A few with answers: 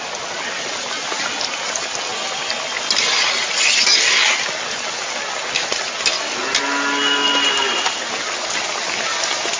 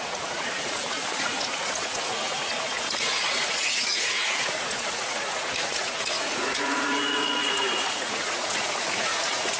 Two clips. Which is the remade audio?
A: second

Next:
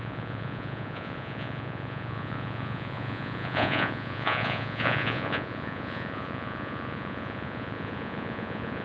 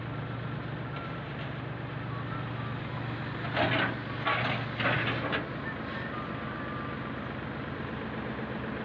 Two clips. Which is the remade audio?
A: first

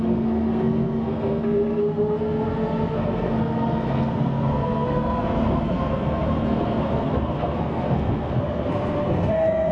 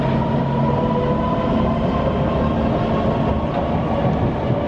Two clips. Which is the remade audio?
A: first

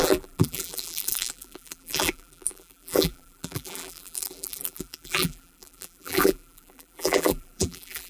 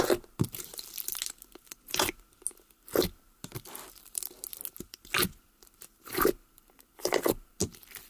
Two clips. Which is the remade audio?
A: first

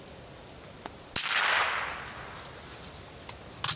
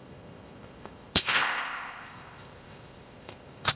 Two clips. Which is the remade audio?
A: second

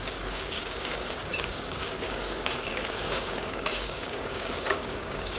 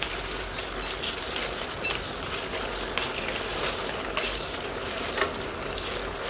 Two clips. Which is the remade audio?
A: first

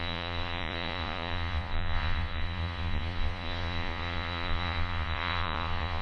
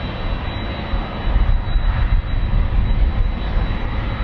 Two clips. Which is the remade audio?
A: first